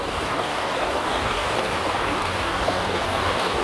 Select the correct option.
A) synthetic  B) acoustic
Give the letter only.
A